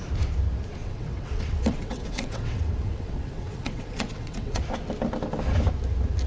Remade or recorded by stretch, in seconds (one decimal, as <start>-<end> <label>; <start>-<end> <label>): 0.0-0.8 recorded; 0.8-4.6 remade; 4.6-6.3 recorded